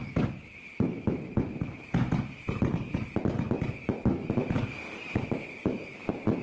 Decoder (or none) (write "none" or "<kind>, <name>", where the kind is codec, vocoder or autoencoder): none